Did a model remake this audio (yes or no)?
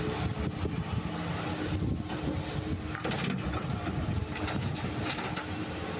no